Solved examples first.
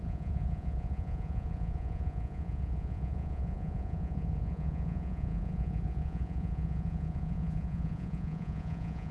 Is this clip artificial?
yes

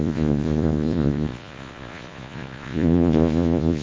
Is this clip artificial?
yes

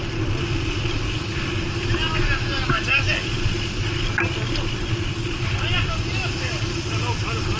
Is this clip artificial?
no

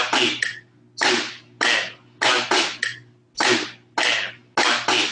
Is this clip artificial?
no